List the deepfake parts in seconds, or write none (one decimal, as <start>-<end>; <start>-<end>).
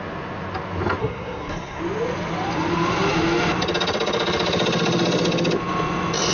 1.0-1.8